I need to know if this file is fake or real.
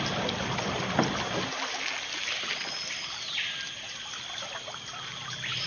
real